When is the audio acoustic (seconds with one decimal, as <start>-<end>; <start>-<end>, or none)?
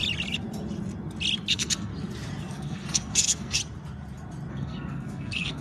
0.0-1.5; 1.9-2.4; 3.6-4.5